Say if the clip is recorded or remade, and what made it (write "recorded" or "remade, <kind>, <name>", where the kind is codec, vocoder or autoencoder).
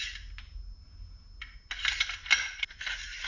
recorded